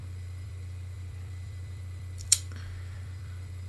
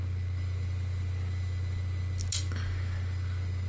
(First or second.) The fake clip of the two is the first